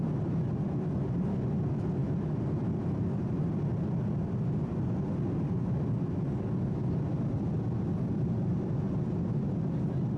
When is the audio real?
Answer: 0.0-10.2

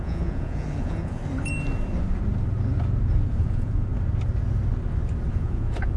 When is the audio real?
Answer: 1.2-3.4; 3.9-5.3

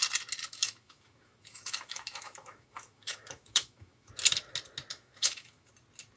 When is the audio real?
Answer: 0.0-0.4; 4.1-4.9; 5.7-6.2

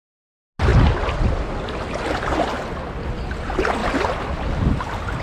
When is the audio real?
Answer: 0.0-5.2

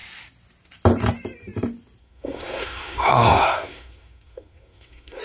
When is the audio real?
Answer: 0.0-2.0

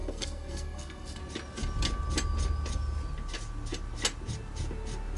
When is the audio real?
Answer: 1.2-5.2